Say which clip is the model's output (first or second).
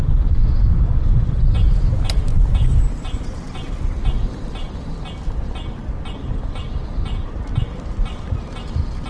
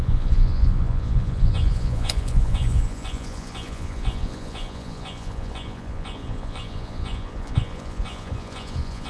second